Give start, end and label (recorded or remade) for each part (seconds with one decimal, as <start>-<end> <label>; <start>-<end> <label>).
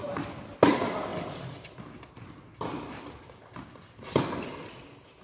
0.0-5.2 recorded